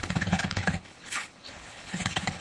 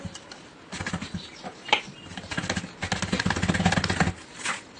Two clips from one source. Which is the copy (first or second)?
first